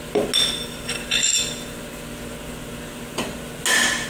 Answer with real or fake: real